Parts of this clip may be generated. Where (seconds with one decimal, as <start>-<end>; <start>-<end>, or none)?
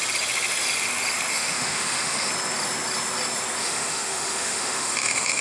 1.3-2.3; 3.6-5.4